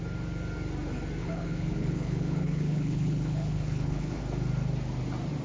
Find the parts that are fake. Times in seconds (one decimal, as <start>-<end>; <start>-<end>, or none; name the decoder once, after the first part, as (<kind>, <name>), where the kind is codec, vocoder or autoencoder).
1.2-4.2 (codec, HILCodec)